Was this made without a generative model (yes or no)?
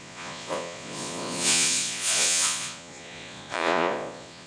no